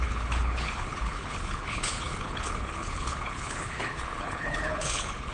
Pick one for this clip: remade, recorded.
remade